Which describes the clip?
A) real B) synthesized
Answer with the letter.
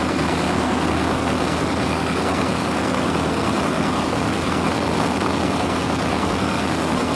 B